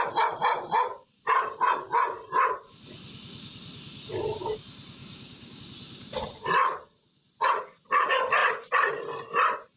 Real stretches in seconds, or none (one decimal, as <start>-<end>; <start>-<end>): 0.0-5.0; 5.6-9.8